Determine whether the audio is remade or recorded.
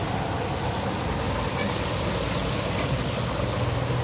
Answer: recorded